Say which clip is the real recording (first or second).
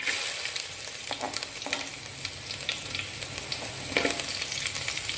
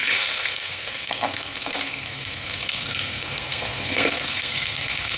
first